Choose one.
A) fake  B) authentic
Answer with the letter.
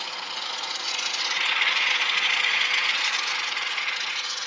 A